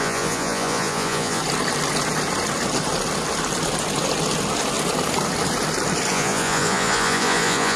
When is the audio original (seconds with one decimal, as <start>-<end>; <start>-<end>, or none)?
1.4-6.1